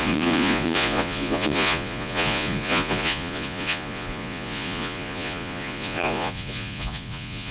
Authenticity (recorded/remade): remade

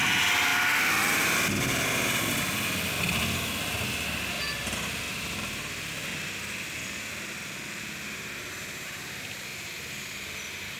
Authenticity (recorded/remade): recorded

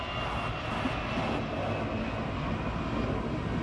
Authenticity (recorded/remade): recorded